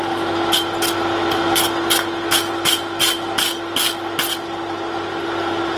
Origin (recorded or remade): recorded